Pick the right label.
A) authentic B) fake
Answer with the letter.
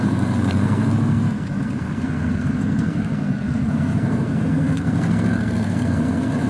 B